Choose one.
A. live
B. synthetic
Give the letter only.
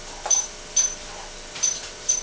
B